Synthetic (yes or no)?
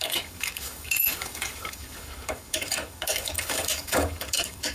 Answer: yes